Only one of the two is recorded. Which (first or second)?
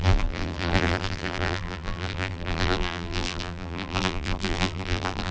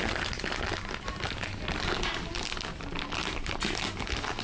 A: second